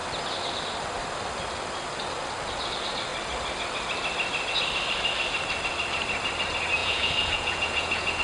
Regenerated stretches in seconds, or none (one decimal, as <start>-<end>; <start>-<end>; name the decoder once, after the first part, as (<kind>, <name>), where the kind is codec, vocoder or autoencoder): 6.8-8.2 (vocoder, Vocos)